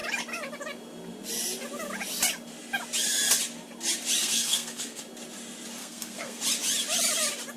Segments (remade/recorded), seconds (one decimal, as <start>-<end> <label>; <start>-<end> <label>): 0.0-4.2 recorded; 4.2-5.0 remade; 5.0-5.8 recorded; 5.8-6.4 remade; 6.4-7.6 recorded